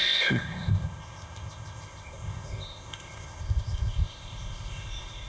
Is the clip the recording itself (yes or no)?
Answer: no